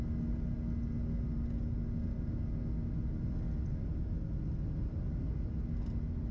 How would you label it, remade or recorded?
recorded